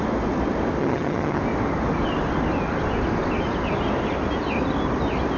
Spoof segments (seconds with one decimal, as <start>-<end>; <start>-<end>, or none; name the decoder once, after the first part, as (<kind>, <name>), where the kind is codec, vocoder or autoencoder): 0.8-1.4 (vocoder, HiFi-GAN)